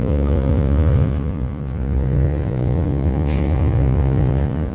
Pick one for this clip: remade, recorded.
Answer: remade